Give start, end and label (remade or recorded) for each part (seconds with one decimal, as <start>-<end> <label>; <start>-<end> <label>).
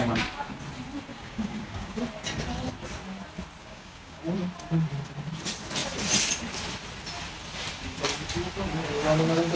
0.0-1.1 recorded; 1.1-2.0 remade; 2.0-3.6 recorded; 3.6-4.2 remade; 4.2-9.6 recorded